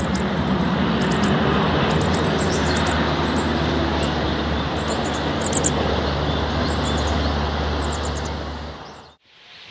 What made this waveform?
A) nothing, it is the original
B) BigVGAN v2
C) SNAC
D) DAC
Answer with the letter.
A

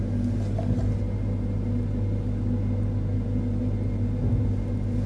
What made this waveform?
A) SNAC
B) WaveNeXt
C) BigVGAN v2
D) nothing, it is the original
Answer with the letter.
D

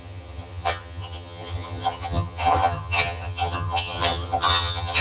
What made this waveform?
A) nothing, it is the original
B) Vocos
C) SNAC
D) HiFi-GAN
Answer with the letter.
D